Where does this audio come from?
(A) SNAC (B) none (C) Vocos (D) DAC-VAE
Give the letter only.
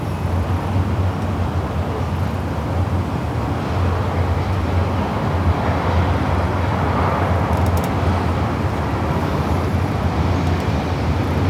B